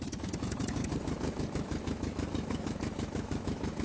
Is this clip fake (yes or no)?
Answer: yes